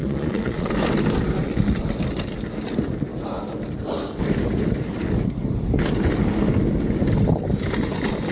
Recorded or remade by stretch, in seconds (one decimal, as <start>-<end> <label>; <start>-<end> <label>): 0.0-0.7 remade; 0.7-8.3 recorded